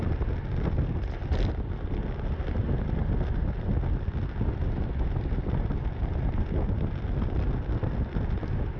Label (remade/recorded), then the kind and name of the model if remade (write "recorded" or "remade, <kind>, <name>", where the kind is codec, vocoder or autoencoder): recorded